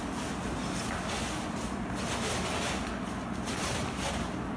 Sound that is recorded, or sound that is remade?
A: recorded